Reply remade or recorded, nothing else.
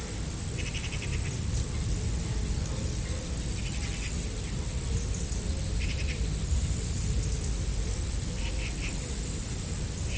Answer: recorded